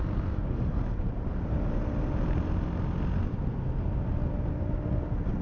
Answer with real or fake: real